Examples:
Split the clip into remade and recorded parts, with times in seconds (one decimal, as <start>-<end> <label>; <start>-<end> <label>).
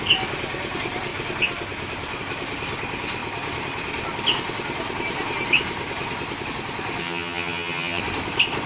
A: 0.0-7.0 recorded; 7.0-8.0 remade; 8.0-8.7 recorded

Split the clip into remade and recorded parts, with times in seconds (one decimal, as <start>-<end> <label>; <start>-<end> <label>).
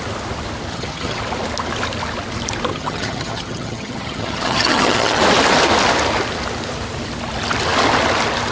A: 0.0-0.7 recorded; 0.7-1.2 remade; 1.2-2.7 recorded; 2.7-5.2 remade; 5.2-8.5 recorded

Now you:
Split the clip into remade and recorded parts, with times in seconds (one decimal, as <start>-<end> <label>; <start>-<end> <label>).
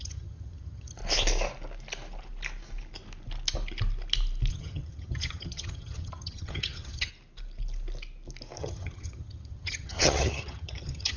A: 0.0-1.0 remade; 1.0-4.5 recorded; 4.5-7.1 remade; 7.1-8.6 recorded; 8.6-11.2 remade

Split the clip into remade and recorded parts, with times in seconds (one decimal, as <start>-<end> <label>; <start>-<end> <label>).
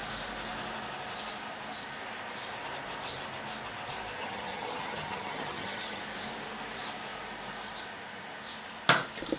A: 0.0-4.2 recorded; 4.2-6.0 remade; 6.0-9.4 recorded